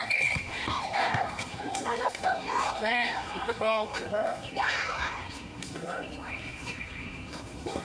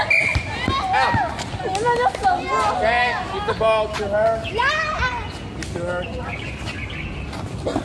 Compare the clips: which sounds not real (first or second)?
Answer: first